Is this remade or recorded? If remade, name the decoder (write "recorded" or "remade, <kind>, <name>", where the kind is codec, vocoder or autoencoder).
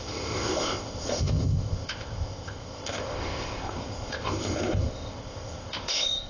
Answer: remade, codec, ZipCodec